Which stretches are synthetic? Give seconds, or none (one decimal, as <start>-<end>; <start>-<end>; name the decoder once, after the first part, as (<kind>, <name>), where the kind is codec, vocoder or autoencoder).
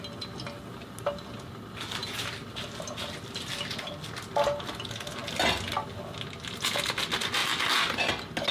2.0-4.3 (vocoder, BigVGAN v2)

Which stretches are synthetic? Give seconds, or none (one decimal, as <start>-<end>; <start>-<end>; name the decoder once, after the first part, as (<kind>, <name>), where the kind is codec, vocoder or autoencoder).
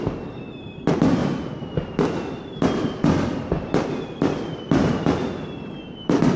1.2-4.9 (vocoder, BigVGAN v2)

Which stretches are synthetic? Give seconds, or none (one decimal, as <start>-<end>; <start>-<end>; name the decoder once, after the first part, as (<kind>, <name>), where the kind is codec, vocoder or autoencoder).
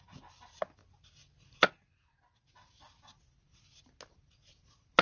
none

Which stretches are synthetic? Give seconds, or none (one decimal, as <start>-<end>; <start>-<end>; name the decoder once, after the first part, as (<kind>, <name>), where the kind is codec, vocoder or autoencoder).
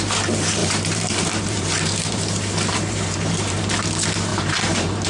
0.6-3.7 (vocoder, BigVGAN v2); 4.3-5.1